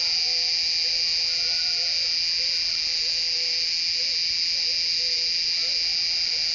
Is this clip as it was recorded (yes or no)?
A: yes